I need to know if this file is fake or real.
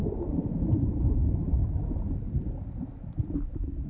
real